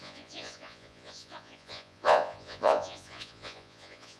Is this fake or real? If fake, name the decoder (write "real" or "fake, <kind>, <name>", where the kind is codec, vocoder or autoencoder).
fake, vocoder, Vocos